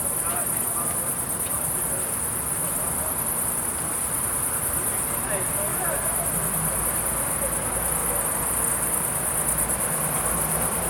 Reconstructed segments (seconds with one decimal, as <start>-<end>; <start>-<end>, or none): none